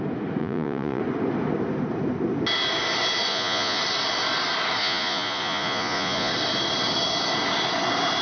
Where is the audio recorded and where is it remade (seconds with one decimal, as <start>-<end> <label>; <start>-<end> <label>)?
0.0-0.4 recorded; 0.4-1.0 remade; 1.0-3.3 recorded; 3.3-3.8 remade; 3.8-4.8 recorded; 4.8-6.3 remade; 6.3-8.2 recorded